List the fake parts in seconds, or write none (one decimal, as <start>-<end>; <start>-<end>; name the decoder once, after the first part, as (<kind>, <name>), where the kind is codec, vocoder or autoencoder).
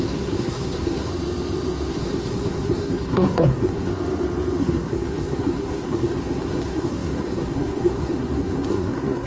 0.0-1.1 (codec, SNAC); 1.9-3.9; 4.6-9.3